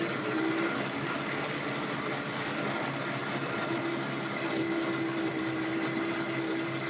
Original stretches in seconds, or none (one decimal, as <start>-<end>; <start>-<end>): 0.0-6.9